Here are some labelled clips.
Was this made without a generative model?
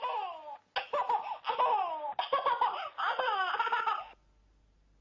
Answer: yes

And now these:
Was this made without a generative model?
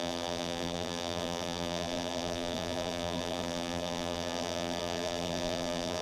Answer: no